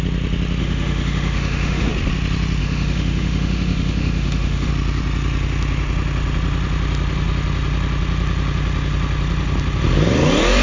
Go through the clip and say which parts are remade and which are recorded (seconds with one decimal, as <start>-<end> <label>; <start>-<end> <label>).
0.0-0.6 recorded; 0.6-1.9 remade; 1.9-2.6 recorded; 2.6-4.7 remade; 4.7-10.6 recorded

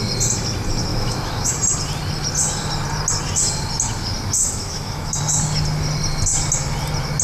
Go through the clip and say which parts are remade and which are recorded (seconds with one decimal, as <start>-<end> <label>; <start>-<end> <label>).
0.0-0.9 recorded; 0.9-1.5 remade; 1.5-4.4 recorded; 4.4-5.2 remade; 5.2-7.2 recorded